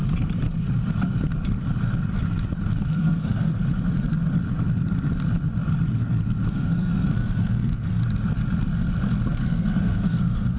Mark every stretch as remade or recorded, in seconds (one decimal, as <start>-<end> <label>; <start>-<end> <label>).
0.0-2.9 recorded; 2.9-3.5 remade; 3.5-6.5 recorded; 6.5-8.0 remade; 8.0-9.4 recorded; 9.4-10.6 remade